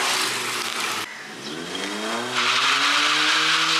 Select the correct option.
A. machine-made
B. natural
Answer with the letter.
B